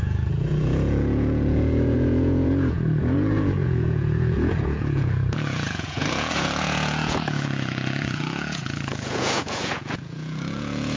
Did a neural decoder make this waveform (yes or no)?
yes